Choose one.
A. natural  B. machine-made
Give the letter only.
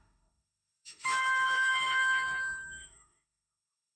B